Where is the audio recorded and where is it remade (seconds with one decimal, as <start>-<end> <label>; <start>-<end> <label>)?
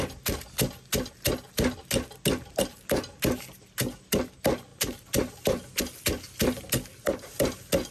0.0-4.7 recorded; 4.7-5.8 remade; 5.8-7.9 recorded